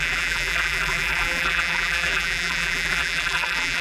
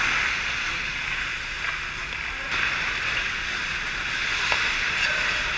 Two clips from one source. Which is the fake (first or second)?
first